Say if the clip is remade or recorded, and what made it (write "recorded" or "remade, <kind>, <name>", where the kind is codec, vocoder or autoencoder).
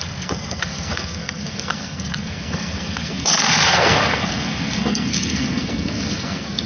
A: remade, codec, SNAC